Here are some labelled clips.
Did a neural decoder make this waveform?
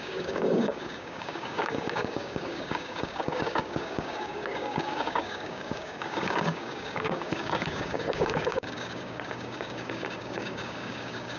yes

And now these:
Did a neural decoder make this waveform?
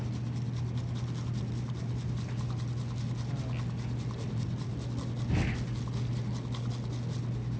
no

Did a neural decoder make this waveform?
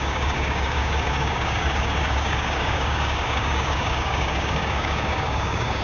yes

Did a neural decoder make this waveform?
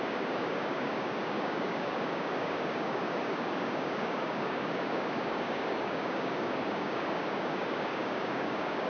yes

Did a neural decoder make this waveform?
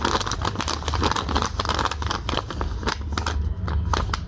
no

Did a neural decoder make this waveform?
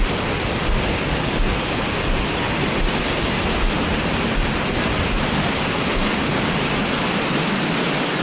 no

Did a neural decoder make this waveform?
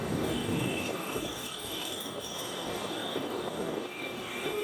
yes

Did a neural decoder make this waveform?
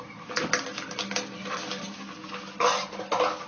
no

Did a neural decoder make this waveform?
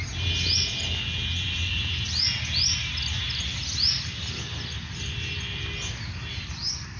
no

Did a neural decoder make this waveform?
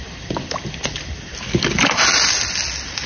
no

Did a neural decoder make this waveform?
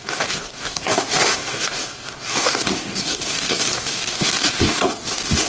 yes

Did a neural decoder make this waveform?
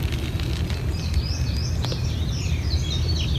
no